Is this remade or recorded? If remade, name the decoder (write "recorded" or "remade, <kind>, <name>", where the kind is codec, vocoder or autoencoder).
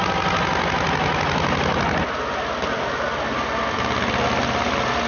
recorded